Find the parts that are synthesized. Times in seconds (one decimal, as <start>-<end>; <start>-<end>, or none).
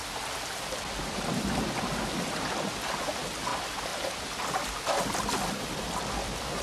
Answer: none